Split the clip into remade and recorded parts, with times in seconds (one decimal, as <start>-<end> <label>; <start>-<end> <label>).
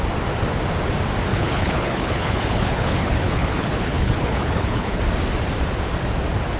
0.0-1.3 recorded; 1.3-5.0 remade; 5.0-6.6 recorded